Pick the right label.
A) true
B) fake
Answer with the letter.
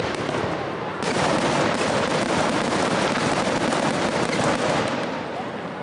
A